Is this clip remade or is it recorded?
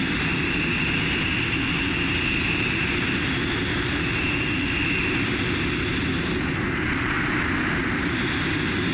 recorded